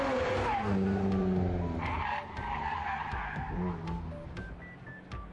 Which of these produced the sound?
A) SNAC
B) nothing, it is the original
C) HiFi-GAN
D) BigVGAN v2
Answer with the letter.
B